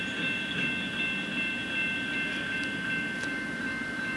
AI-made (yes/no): no